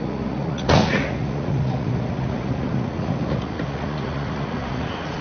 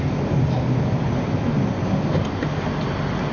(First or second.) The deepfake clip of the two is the first